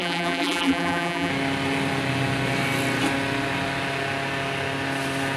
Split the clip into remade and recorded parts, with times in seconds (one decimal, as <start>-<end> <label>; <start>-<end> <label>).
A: 0.0-1.3 remade; 1.3-5.4 recorded